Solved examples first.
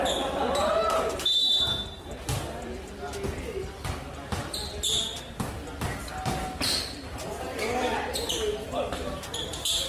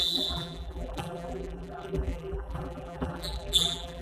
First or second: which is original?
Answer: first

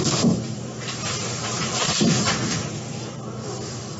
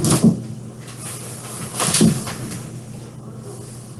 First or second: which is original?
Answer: second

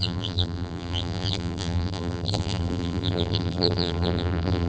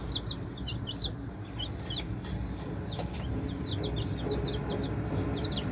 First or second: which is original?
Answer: second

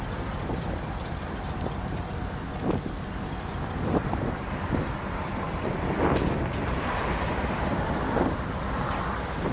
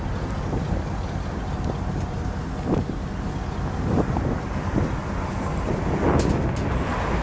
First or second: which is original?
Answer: second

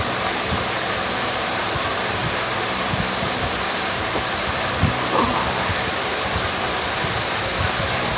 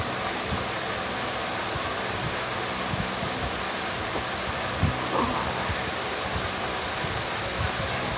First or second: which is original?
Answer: second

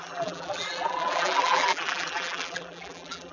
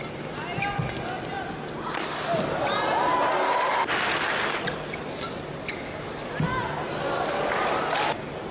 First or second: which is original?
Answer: second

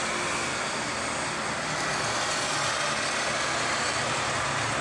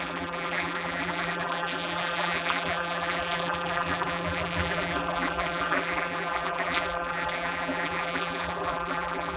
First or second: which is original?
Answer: first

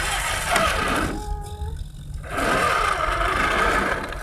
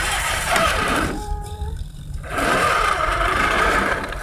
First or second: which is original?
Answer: first